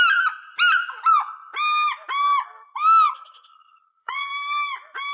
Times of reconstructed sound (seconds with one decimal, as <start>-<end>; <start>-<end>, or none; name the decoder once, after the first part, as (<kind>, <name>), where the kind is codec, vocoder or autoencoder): 3.5-4.3 (vocoder, Vocos)